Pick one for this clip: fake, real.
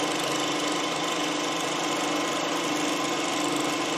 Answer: real